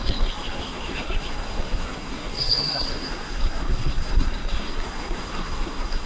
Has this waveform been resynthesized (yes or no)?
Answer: yes